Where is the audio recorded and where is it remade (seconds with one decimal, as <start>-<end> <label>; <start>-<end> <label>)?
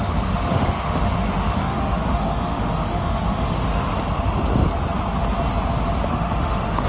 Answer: 0.0-3.9 remade; 3.9-6.1 recorded; 6.1-6.9 remade